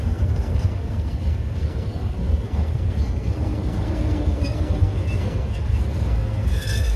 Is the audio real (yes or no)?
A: no